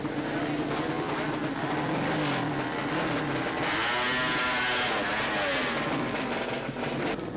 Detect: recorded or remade recorded